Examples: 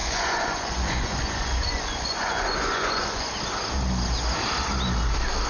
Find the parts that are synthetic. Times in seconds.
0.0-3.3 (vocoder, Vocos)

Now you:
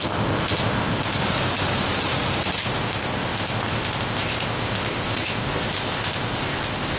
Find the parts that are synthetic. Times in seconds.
0.0-1.2 (codec, ZipCodec); 2.6-7.0

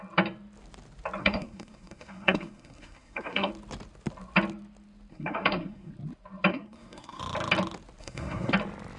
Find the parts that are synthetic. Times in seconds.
1.2-3.5 (codec, SNAC); 5.1-5.9; 6.5-7.2; 8.0-8.5

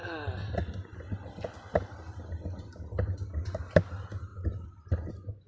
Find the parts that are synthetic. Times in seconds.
none